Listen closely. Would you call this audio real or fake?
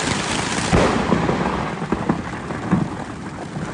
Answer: real